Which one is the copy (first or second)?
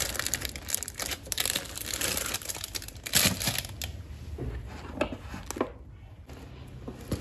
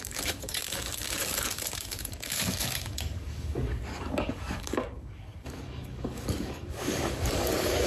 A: second